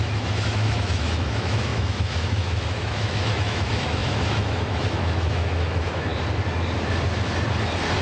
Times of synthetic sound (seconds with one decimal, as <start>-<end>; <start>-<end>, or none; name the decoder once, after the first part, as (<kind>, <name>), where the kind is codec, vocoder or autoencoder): 0.0-6.1 (autoencoder, DAC-VAE)